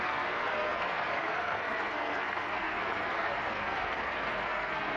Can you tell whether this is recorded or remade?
remade